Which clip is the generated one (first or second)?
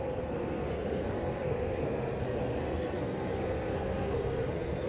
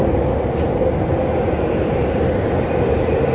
first